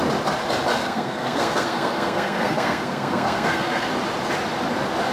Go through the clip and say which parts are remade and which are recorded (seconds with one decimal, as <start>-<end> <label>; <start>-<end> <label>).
0.0-0.8 recorded; 0.8-3.9 remade; 3.9-5.1 recorded